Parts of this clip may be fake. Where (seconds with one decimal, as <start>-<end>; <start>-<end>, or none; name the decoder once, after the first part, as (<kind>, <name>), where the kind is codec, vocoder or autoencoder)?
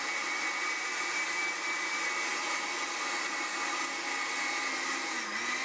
none